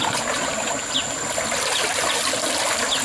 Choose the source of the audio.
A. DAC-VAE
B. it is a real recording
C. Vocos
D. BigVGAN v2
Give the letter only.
B